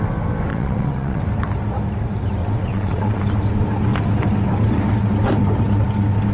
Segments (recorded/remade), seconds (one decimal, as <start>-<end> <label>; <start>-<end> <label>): 0.0-0.5 recorded; 0.5-1.2 remade; 1.2-2.4 recorded; 2.4-3.2 remade; 3.2-6.3 recorded